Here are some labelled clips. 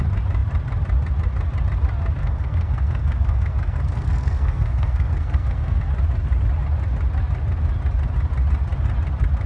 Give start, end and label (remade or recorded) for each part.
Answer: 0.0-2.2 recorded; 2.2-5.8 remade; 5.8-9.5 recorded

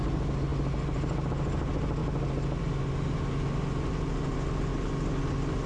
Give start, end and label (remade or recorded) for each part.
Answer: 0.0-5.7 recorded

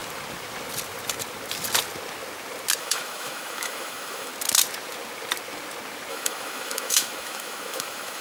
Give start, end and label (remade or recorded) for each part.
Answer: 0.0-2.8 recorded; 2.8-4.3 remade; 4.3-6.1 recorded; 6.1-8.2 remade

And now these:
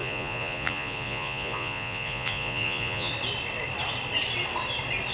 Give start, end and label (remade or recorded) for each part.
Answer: 0.0-3.1 remade; 3.1-5.1 recorded

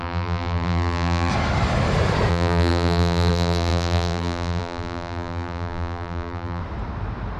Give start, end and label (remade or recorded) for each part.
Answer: 0.0-1.3 remade; 1.3-2.3 recorded; 2.3-6.6 remade; 6.6-7.4 recorded